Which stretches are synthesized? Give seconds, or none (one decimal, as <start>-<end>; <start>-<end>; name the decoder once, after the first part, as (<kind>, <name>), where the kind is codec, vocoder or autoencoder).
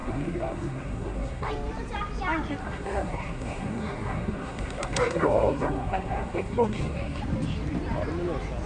0.0-1.5 (codec, SNAC); 2.6-7.2